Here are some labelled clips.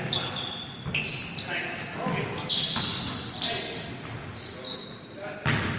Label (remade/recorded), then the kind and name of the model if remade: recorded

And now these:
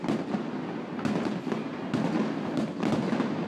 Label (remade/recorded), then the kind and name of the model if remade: recorded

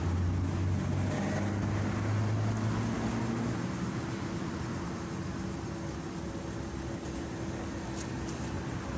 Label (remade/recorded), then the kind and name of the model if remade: recorded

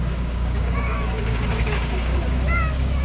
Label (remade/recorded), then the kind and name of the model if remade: remade, codec, DAC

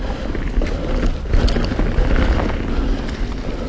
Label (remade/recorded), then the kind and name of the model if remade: recorded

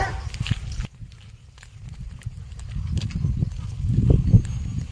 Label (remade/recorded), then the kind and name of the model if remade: recorded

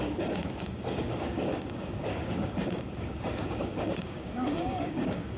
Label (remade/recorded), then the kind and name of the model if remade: remade, codec, DAC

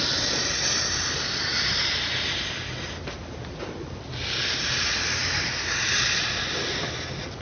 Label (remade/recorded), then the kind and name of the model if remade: recorded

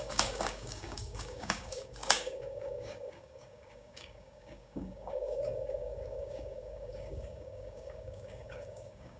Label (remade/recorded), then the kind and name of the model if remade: remade, codec, DAC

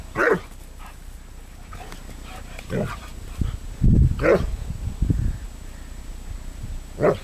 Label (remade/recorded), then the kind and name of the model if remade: recorded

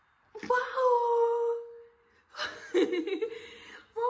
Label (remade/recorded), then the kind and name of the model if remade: recorded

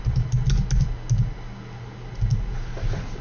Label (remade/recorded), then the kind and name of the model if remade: recorded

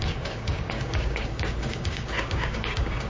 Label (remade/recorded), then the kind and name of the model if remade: remade, codec, DAC